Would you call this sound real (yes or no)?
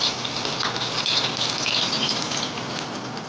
yes